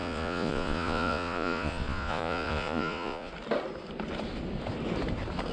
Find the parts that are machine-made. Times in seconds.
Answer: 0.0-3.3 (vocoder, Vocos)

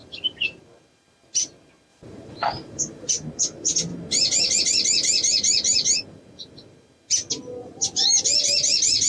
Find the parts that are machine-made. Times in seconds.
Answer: 0.0-0.6 (vocoder, BigVGAN v2); 1.9-3.1; 7.6-8.2